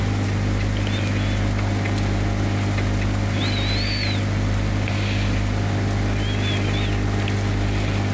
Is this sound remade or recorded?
recorded